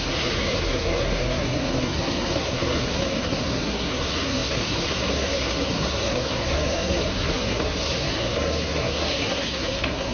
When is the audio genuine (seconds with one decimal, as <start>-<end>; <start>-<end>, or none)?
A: none

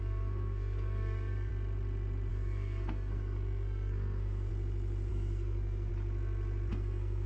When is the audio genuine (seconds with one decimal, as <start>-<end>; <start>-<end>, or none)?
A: 1.5-2.3; 4.5-5.1; 5.9-6.7

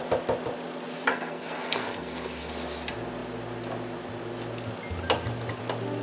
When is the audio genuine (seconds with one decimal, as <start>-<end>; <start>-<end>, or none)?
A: 0.0-1.1; 2.5-6.0